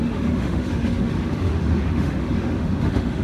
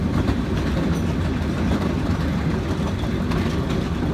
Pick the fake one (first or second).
first